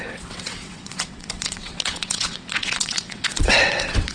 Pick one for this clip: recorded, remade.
remade